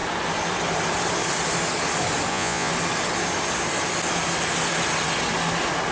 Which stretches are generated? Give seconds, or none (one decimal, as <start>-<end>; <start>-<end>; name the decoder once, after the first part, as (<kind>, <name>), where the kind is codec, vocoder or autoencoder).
2.3-2.7 (vocoder, Vocos)